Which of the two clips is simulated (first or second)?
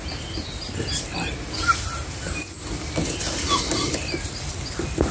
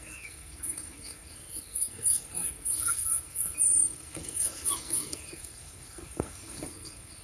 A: second